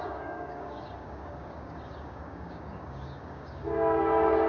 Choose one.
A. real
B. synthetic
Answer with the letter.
B